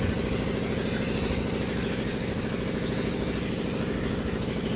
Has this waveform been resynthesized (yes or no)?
no